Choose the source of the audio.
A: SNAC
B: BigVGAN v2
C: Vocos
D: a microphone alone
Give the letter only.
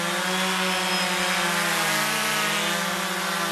D